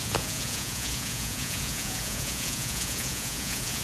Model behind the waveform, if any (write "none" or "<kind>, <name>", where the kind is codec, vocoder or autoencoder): vocoder, Vocos